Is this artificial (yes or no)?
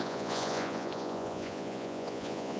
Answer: yes